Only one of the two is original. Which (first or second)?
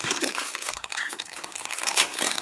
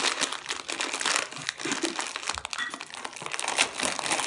second